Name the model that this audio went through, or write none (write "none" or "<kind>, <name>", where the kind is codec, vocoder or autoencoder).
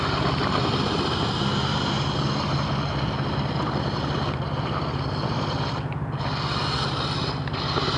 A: none